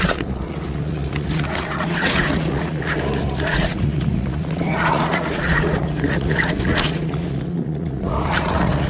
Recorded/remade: remade